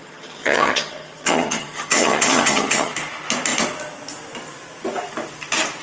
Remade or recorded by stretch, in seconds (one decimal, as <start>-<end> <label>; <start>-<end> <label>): 0.0-2.9 remade; 2.9-5.8 recorded